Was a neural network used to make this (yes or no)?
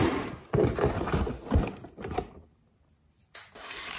no